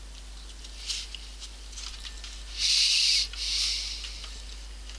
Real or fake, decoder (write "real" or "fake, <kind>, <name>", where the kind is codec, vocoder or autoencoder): real